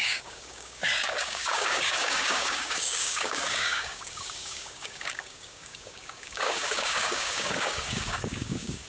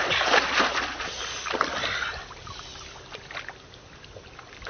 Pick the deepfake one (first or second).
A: first